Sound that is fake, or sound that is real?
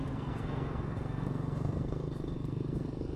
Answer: fake